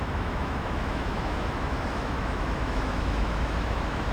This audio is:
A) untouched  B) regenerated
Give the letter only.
B